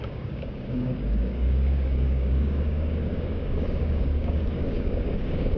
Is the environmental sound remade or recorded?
remade